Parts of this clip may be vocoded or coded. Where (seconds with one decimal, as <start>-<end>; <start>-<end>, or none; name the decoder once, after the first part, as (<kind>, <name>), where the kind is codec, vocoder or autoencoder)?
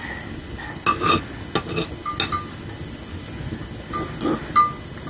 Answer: none